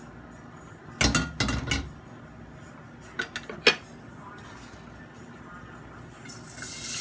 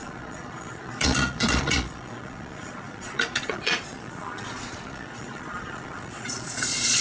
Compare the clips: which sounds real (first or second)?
first